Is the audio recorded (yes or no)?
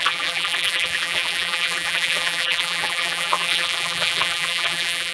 no